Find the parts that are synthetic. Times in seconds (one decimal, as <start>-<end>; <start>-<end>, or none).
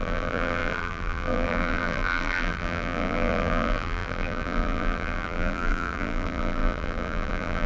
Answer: 0.0-7.7